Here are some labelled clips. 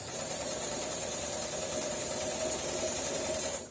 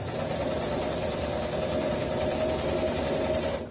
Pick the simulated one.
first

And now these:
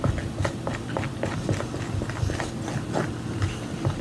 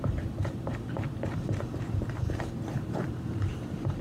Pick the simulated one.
second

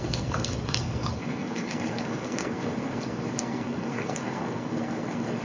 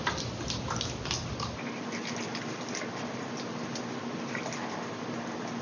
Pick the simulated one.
first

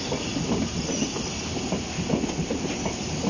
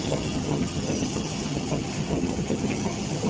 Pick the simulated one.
second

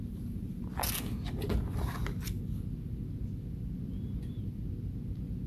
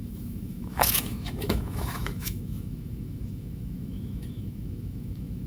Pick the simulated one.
second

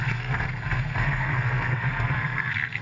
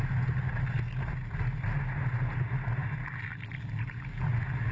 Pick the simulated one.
first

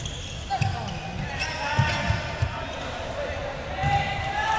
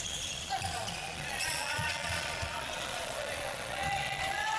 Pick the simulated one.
second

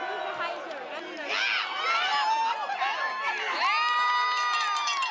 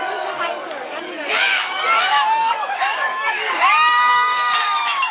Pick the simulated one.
second